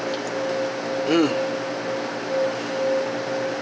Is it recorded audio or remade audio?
recorded